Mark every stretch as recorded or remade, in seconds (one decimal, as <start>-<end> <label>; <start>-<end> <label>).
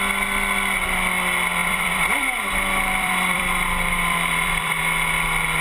0.0-1.6 recorded; 1.6-4.8 remade; 4.8-5.6 recorded